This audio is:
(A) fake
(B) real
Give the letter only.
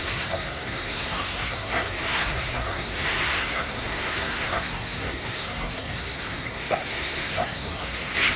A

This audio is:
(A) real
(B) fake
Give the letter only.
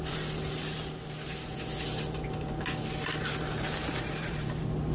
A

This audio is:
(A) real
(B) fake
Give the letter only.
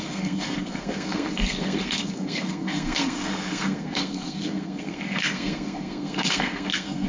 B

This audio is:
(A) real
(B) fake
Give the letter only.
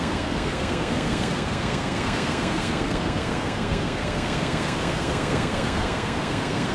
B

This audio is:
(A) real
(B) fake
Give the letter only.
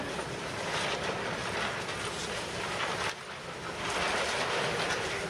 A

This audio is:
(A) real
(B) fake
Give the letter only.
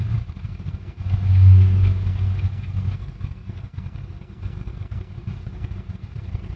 B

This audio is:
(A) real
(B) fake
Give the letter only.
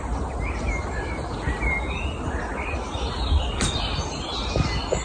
A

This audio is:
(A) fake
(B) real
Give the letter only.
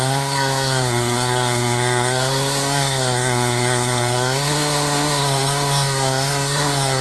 A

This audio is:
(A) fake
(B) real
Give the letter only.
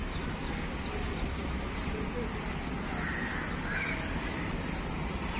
B